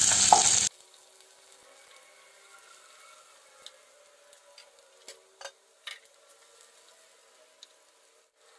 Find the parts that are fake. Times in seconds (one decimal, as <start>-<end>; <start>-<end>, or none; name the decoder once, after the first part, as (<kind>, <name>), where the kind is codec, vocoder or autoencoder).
none